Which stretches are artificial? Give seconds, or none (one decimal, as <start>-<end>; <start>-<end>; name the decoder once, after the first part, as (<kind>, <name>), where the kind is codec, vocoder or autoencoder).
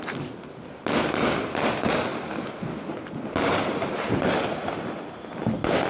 none